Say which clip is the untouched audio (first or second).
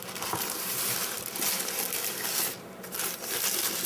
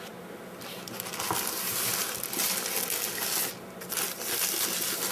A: second